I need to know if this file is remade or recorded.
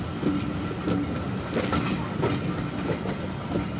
recorded